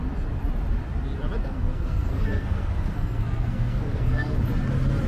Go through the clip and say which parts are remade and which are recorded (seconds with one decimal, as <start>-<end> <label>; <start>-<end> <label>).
0.0-1.4 recorded; 1.4-4.4 remade; 4.4-5.1 recorded